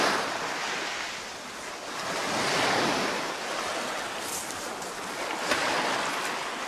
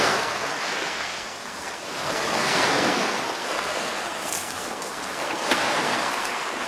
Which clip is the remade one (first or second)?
second